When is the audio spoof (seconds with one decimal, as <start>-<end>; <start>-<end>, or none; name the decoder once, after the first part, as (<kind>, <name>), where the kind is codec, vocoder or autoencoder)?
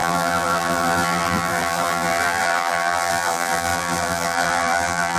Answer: 0.0-5.2 (vocoder, BigVGAN v2)